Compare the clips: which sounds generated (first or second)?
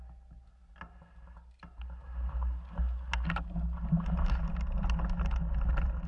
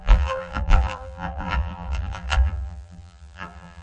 second